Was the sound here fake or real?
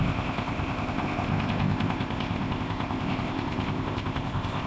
fake